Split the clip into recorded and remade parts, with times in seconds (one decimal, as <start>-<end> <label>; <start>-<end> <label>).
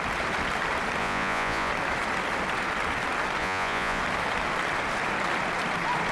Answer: 0.0-1.0 recorded; 1.0-1.7 remade; 1.7-3.4 recorded; 3.4-4.0 remade; 4.0-6.1 recorded